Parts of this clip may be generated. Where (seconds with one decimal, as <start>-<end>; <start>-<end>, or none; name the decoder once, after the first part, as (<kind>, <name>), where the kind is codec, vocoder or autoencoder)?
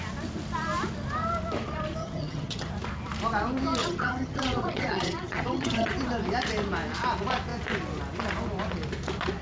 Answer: 2.0-2.7 (vocoder, HiFi-GAN); 3.8-5.9